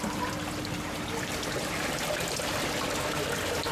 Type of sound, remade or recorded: recorded